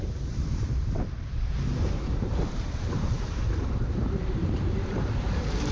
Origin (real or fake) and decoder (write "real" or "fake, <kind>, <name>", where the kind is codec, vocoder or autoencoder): fake, vocoder, BigVGAN v2